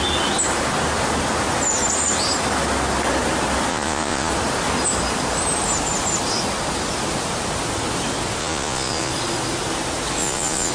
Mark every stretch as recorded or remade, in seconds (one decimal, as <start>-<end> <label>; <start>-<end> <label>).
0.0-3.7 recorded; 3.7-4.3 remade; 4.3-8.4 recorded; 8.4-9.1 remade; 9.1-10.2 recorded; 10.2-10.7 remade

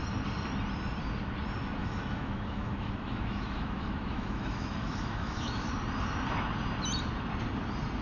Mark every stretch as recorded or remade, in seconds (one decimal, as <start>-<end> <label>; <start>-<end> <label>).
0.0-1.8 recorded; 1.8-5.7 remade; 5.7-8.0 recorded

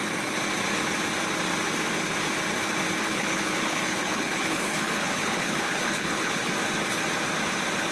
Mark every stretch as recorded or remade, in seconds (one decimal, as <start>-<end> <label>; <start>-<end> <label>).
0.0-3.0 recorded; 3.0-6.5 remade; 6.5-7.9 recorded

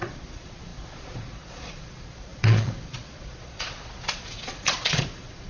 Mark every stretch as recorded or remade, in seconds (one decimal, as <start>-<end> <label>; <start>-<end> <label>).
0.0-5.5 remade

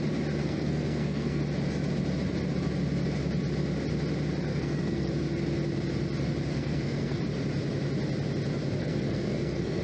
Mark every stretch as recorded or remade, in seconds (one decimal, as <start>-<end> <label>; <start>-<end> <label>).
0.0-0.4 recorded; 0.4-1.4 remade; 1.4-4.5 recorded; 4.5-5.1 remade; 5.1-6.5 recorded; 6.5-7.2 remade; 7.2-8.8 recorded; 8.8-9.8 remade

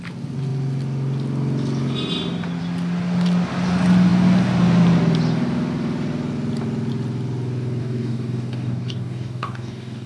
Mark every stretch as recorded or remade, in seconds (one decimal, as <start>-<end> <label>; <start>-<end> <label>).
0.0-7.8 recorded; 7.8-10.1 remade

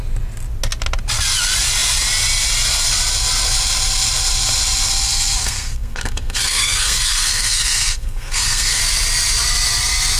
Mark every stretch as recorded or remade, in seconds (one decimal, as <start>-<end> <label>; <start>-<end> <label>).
0.0-5.4 recorded; 5.4-8.8 remade; 8.8-10.2 recorded

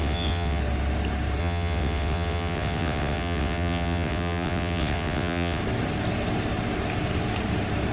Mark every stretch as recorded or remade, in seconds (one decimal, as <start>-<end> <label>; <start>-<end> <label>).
0.0-0.6 remade; 0.6-1.4 recorded; 1.4-5.6 remade; 5.6-7.9 recorded